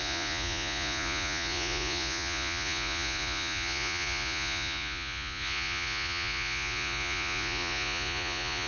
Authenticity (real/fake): fake